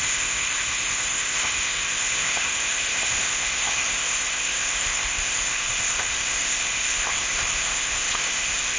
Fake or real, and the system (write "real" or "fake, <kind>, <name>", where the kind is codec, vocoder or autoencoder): fake, codec, ZipCodec